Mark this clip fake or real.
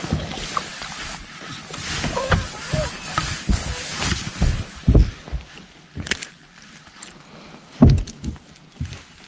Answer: real